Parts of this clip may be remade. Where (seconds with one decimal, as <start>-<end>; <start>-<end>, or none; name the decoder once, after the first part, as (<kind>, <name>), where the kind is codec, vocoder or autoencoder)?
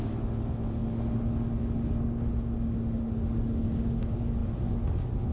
none